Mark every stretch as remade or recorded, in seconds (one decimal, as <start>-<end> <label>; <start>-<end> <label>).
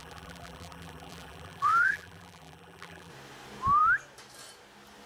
0.0-3.1 remade; 3.1-5.1 recorded